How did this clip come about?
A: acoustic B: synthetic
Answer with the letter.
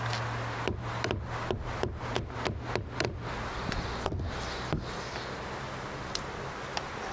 A